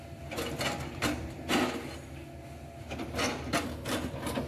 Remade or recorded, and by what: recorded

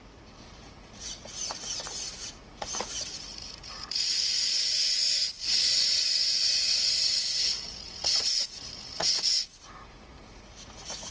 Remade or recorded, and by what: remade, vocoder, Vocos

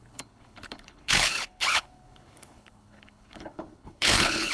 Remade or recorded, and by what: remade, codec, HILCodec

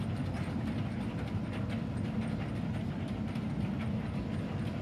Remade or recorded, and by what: recorded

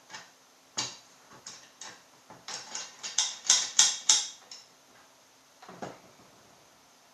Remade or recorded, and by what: remade, vocoder, BigVGAN v2